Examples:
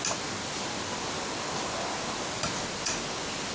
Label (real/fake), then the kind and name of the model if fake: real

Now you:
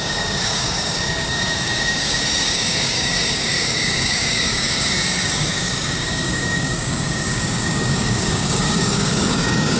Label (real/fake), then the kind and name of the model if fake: fake, codec, DAC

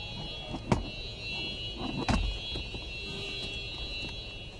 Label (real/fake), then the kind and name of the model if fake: real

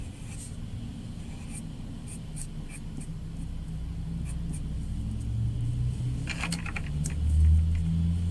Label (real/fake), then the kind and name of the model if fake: real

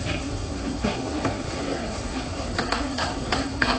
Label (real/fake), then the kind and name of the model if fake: fake, codec, SNAC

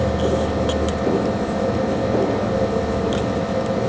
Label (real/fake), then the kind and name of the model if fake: real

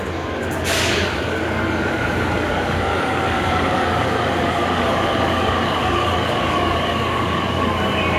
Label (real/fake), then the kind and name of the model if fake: fake, codec, DAC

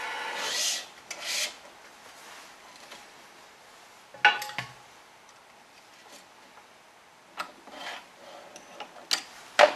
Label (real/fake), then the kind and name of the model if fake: real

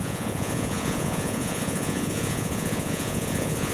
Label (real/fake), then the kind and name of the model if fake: fake, vocoder, Vocos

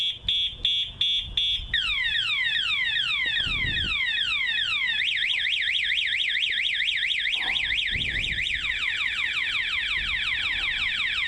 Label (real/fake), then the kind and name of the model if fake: real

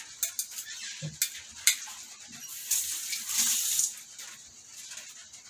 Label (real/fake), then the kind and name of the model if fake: real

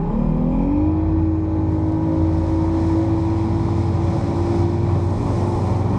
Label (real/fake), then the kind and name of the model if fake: real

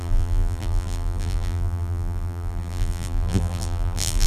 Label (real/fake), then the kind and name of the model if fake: fake, vocoder, BigVGAN v2